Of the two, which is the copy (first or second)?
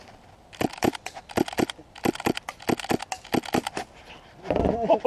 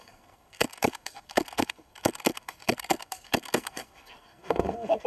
second